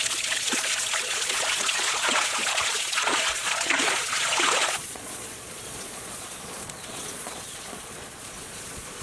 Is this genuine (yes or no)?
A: no